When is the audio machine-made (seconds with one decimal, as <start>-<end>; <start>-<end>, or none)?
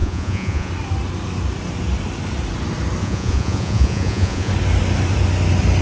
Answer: 0.0-0.7; 3.0-4.5